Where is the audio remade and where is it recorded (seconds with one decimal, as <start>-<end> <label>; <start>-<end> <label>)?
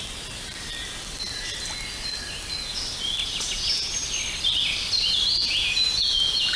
0.0-3.2 recorded; 3.2-3.9 remade; 3.9-5.4 recorded; 5.4-6.6 remade